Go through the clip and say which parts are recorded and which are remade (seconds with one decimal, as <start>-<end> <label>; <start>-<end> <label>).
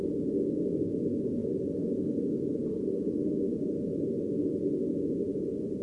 0.0-5.8 recorded